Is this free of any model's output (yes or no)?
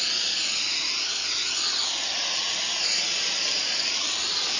yes